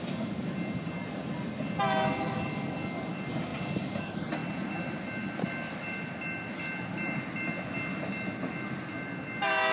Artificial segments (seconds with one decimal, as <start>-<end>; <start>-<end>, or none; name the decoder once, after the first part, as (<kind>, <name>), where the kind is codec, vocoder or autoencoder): none